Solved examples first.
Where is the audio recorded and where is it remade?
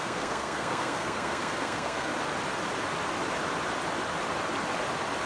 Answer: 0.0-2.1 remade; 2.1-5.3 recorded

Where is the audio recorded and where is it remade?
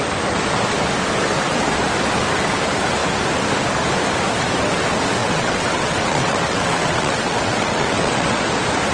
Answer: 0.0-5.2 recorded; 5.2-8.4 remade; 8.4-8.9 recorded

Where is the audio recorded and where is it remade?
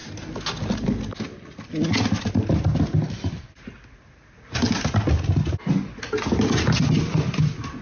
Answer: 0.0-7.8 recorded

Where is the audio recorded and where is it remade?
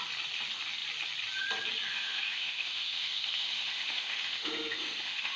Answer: 0.0-1.9 recorded; 1.9-5.4 remade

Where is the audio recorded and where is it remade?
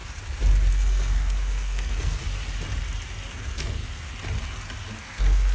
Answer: 0.0-0.7 recorded; 0.7-2.2 remade; 2.2-3.3 recorded; 3.3-3.8 remade; 3.8-4.9 recorded; 4.9-5.5 remade